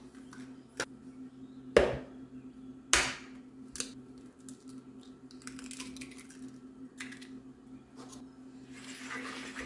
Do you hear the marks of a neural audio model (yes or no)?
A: no